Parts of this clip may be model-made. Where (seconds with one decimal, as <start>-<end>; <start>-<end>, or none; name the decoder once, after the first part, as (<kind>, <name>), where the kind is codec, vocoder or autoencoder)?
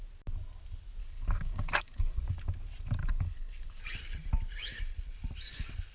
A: 1.0-2.2 (codec, DAC); 3.0-3.8